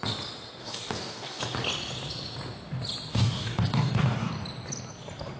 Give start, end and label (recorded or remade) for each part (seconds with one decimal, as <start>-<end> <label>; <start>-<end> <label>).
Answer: 0.0-0.6 recorded; 0.6-1.4 remade; 1.4-3.1 recorded; 3.1-4.3 remade; 4.3-5.4 recorded